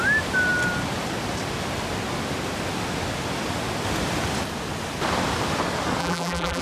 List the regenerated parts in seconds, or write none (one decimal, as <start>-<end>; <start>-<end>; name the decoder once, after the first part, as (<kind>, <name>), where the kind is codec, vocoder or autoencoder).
6.0-6.6 (vocoder, BigVGAN v2)